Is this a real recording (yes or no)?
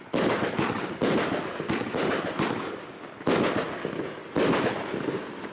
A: yes